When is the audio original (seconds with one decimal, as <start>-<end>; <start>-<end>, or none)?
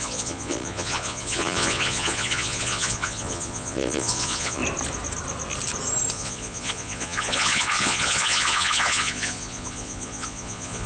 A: 4.6-6.1